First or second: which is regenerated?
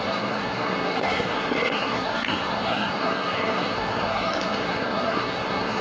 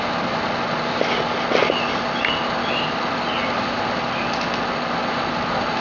first